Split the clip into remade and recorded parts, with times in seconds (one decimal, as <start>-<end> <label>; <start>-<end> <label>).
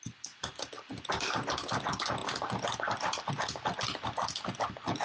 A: 0.0-5.0 recorded